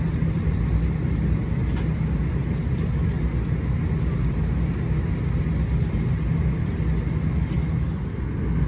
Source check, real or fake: real